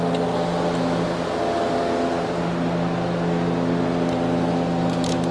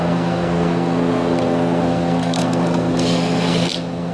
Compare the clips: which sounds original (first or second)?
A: first